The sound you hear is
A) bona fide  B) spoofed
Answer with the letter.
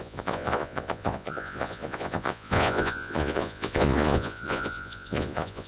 B